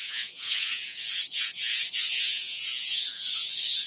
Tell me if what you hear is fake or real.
fake